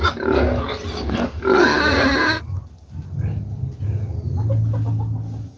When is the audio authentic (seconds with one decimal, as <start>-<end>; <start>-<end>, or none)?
0.0-5.6